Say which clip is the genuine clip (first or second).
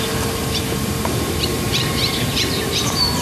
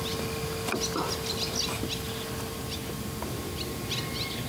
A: second